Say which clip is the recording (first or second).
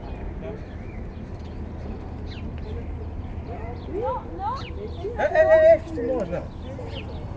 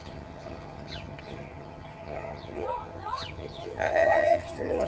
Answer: first